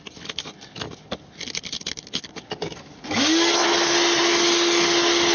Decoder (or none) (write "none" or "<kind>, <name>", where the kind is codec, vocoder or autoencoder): none